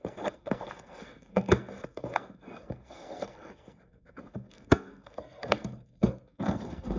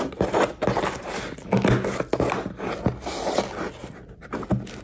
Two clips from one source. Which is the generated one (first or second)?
first